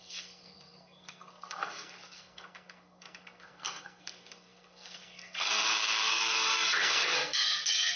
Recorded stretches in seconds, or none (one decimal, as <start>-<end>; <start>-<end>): none